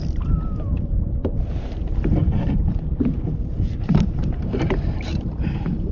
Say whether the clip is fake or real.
fake